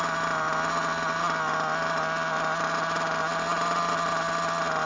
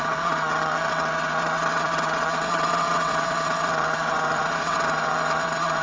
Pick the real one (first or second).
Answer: first